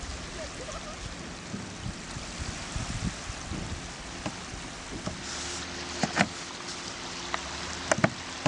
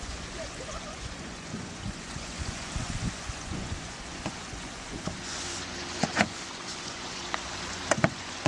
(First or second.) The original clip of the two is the first